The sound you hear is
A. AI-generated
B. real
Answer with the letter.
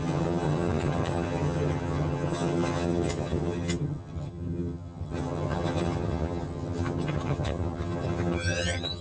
A